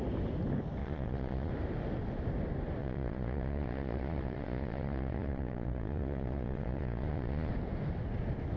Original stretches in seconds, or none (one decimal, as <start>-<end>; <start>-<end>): 0.0-0.8; 1.5-2.8; 7.5-8.6